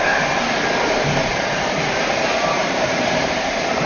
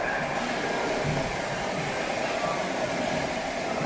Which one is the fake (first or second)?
first